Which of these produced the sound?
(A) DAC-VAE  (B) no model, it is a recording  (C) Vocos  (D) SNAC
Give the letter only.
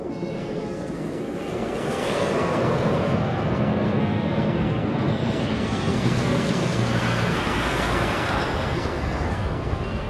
D